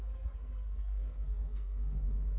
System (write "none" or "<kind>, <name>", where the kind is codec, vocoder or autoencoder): codec, SNAC